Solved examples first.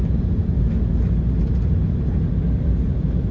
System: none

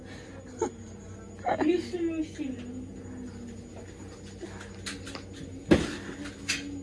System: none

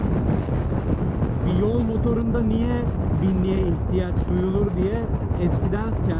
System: none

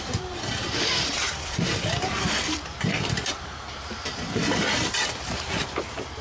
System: vocoder, BigVGAN v2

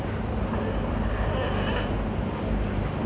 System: none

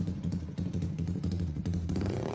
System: vocoder, Vocos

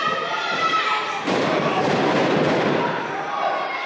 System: vocoder, BigVGAN v2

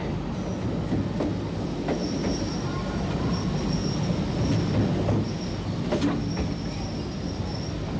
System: none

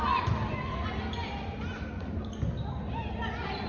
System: none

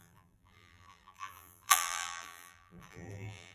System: vocoder, BigVGAN v2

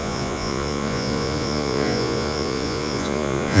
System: vocoder, Vocos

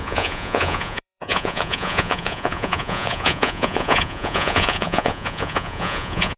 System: vocoder, Vocos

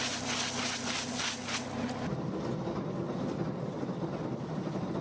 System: none